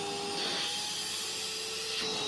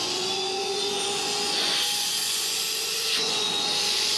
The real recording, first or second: first